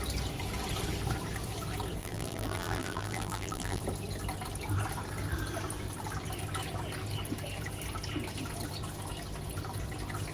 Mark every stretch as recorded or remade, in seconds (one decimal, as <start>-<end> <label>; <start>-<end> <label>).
0.0-2.0 recorded; 2.0-3.8 remade; 3.8-10.3 recorded